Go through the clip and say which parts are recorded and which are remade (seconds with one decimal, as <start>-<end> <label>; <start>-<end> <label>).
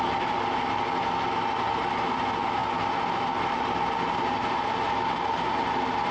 0.0-6.1 recorded